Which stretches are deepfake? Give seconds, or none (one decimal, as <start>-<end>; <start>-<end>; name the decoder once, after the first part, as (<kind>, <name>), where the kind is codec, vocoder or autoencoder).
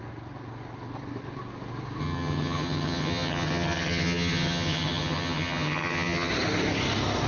2.0-6.3 (vocoder, HiFi-GAN)